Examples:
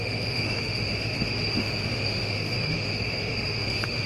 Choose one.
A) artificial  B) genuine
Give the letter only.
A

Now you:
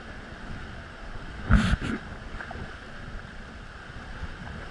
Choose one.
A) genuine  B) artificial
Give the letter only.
A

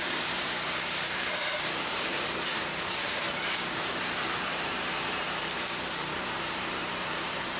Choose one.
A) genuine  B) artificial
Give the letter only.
B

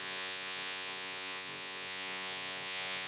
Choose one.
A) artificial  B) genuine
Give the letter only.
A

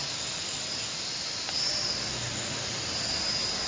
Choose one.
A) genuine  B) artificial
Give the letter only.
A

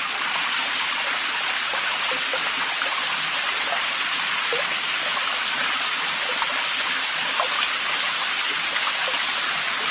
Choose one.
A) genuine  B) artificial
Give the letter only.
A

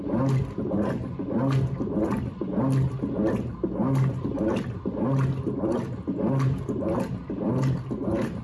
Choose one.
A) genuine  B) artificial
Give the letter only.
A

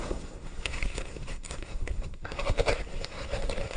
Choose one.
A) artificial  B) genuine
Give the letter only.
A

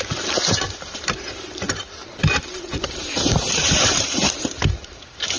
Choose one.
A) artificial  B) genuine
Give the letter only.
A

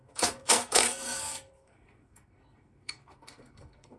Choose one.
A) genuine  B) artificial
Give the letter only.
B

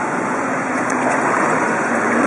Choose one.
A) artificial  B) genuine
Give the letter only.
A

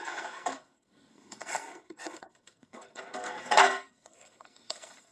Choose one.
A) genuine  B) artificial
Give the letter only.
B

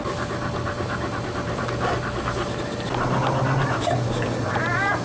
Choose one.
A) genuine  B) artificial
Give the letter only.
A